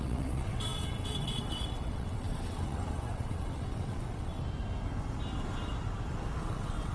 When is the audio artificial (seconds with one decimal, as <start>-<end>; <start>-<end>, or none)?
0.0-4.4; 6.4-6.9